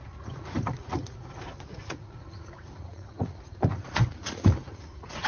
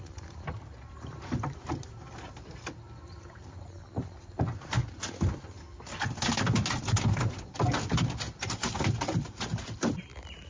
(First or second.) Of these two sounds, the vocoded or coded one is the first